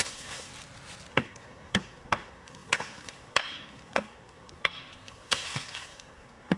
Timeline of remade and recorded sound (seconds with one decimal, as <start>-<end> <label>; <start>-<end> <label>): 0.0-0.5 remade; 0.5-1.1 recorded; 1.1-6.6 remade